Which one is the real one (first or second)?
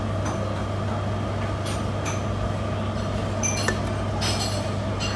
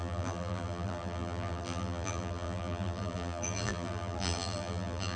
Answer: first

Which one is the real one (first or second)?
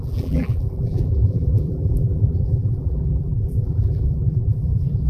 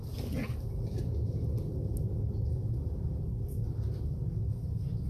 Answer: second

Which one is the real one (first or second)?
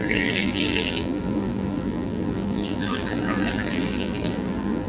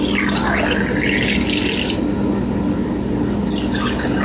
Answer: second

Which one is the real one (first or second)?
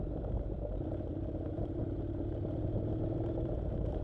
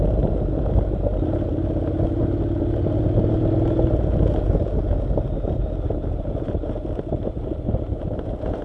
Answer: second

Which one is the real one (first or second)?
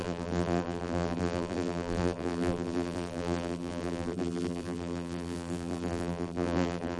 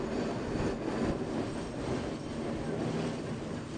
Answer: second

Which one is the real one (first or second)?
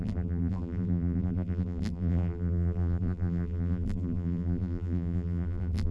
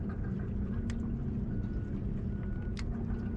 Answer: second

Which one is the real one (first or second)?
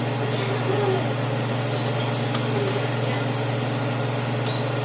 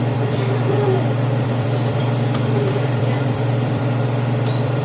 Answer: first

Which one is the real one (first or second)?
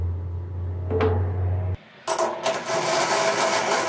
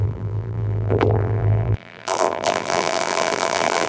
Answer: first